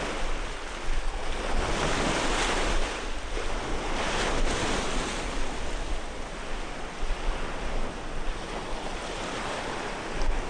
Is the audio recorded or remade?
recorded